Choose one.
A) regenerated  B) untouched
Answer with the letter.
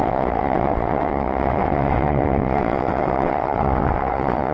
A